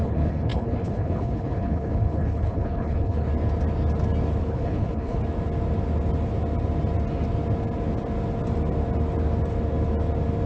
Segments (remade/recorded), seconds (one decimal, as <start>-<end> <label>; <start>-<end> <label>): 0.0-3.3 remade; 3.3-4.4 recorded; 4.4-5.2 remade; 5.2-10.5 recorded